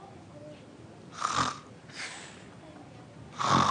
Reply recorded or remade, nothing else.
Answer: recorded